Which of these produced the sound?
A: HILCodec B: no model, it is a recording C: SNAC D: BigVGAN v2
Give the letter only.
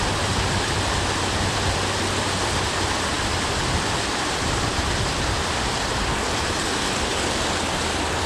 D